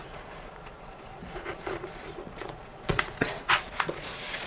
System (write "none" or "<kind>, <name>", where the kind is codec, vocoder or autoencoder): vocoder, Vocos